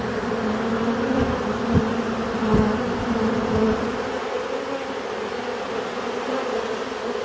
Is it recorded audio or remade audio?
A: recorded